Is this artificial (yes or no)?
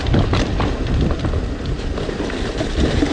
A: no